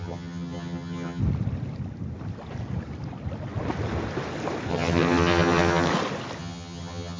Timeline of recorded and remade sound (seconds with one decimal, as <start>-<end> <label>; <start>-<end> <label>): 0.0-1.2 remade; 1.2-4.7 recorded; 4.7-5.9 remade; 5.9-6.4 recorded; 6.4-7.2 remade